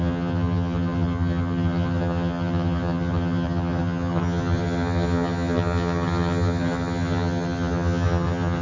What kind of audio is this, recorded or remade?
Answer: remade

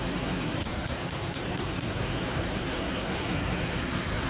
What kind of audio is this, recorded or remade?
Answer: remade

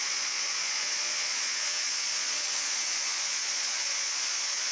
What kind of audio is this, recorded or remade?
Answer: remade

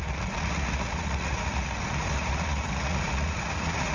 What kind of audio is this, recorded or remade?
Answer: remade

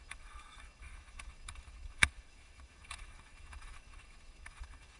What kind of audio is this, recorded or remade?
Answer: remade